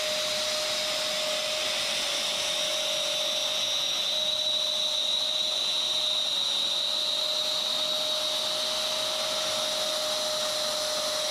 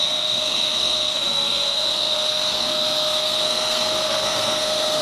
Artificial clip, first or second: second